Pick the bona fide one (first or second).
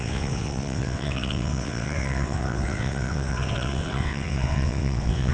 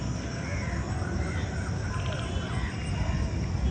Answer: second